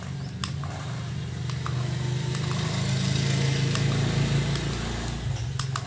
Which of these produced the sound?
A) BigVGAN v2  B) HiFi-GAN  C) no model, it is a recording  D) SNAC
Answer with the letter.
C